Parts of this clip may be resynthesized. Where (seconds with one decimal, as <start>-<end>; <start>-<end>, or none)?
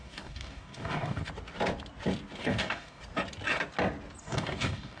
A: 0.0-1.3; 2.4-3.0; 4.2-5.0